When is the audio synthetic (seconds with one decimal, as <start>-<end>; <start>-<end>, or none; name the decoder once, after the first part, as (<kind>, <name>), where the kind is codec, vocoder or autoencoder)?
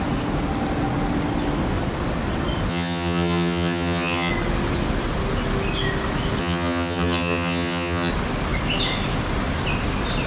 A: 2.7-4.3 (vocoder, HiFi-GAN); 6.4-8.1